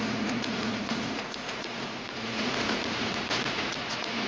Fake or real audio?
fake